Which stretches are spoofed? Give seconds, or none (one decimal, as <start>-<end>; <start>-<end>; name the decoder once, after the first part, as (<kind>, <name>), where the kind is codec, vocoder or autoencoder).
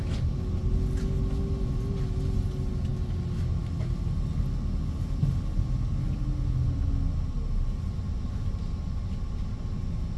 none